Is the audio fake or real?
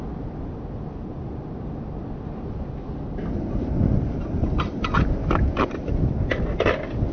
real